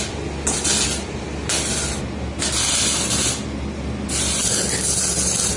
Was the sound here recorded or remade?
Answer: recorded